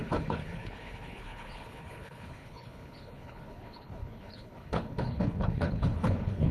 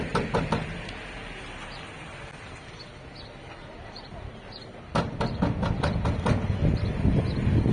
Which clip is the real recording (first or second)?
second